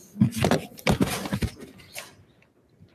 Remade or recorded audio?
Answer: recorded